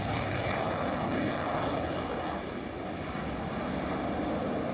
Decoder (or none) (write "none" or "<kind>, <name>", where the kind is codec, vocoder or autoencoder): none